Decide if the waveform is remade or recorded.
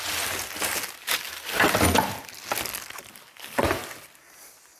recorded